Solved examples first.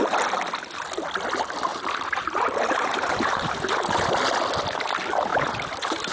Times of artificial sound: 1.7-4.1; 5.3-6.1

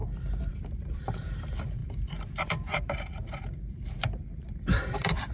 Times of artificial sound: 0.5-5.3

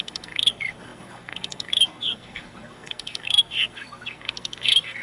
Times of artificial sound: 0.0-5.0